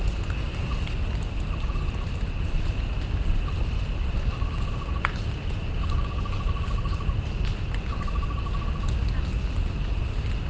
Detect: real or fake real